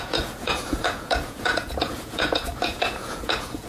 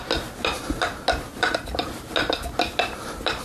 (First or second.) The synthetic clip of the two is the first